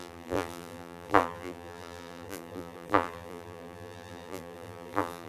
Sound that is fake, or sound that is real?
fake